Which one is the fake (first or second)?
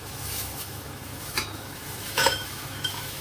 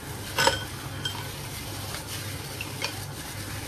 first